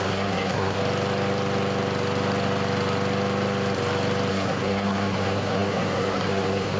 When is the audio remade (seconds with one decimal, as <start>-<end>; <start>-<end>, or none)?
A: 0.0-0.8; 4.3-6.8